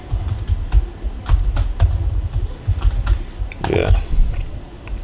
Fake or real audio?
real